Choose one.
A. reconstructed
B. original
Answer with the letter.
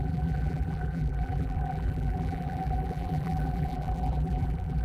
A